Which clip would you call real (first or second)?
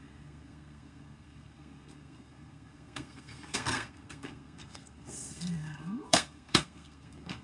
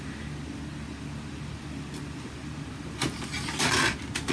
second